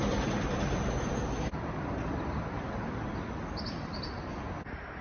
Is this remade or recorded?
recorded